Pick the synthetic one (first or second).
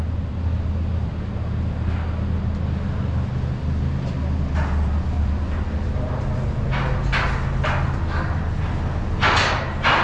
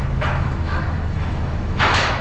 second